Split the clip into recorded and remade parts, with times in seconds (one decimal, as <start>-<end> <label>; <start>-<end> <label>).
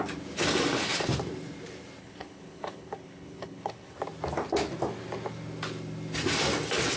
0.0-2.0 recorded; 2.0-4.0 remade; 4.0-7.0 recorded